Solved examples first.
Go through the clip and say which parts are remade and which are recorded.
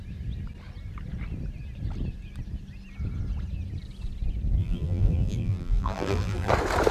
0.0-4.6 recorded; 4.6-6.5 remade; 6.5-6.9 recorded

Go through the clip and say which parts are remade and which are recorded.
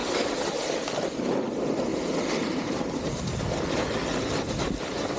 0.0-1.9 recorded; 1.9-2.9 remade; 2.9-5.2 recorded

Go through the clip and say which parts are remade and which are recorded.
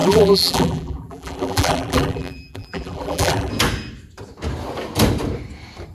0.0-3.5 remade; 3.5-5.9 recorded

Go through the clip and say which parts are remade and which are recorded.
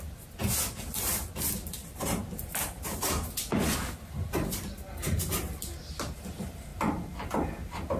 0.0-1.8 recorded; 1.8-3.0 remade; 3.0-6.7 recorded; 6.7-7.3 remade; 7.3-8.0 recorded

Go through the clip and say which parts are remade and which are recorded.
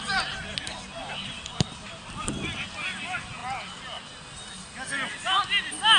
0.0-1.0 recorded; 1.0-2.4 remade; 2.4-6.0 recorded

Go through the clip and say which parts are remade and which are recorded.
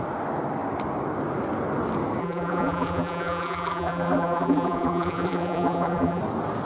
0.0-2.2 recorded; 2.2-6.2 remade; 6.2-6.7 recorded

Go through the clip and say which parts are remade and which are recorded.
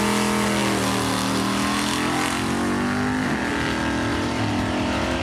0.0-4.1 recorded; 4.1-5.2 remade